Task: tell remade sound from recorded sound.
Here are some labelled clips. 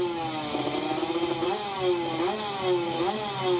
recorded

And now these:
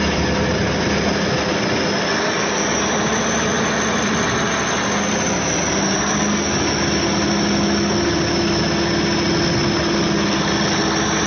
recorded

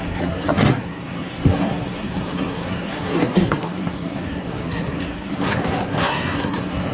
remade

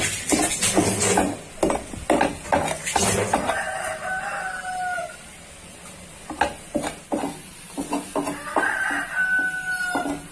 recorded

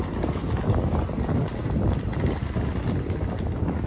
recorded